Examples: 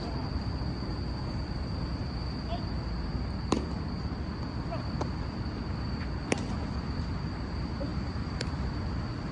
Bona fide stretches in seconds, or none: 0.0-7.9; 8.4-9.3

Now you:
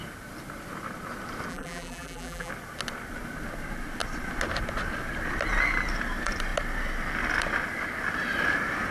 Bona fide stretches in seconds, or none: 0.0-1.5; 2.5-8.9

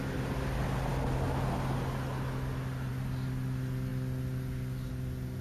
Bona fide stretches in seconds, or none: 0.0-5.4

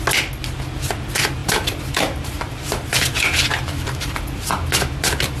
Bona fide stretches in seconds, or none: 0.0-1.4; 4.2-5.4

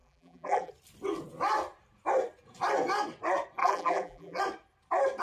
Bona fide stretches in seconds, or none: 0.7-3.6; 4.4-5.2

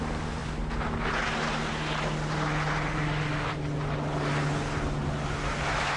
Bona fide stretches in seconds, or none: 0.0-6.0

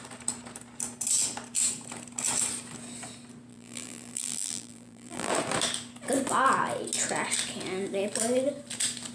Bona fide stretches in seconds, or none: 0.0-3.5; 5.3-9.1